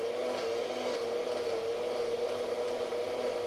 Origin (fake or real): real